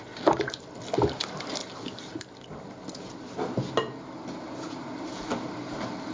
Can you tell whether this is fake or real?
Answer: real